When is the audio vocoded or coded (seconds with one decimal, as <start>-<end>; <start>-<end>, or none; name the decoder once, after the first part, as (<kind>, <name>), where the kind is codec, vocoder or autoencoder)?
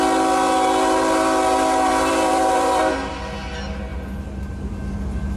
1.9-2.9 (vocoder, BigVGAN v2)